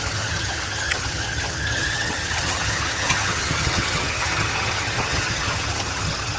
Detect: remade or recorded remade